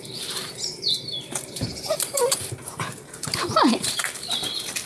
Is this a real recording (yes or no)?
no